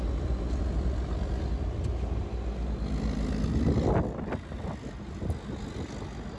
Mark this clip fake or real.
real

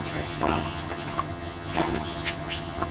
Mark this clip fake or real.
fake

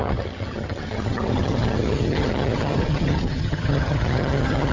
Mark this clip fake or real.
fake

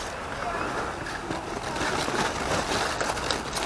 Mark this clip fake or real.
real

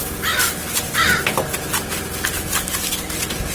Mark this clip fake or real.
real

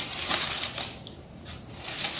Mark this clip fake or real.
real